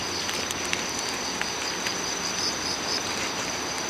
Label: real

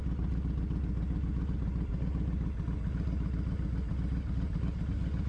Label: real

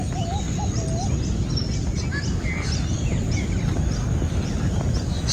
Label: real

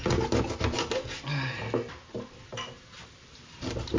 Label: real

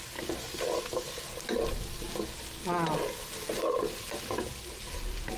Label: real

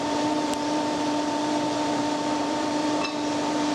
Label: fake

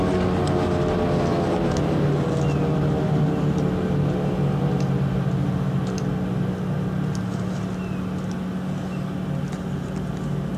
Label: real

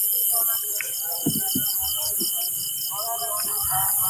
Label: real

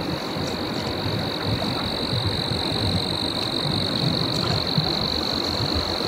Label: real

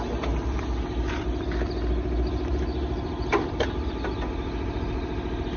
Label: fake